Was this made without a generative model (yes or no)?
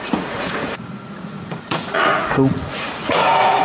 no